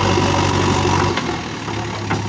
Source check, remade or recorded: recorded